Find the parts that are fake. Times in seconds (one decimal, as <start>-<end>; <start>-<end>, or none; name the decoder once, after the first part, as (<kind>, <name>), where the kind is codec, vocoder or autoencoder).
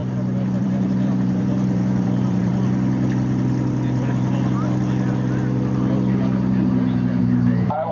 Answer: 0.6-2.5 (vocoder, BigVGAN v2); 7.2-7.9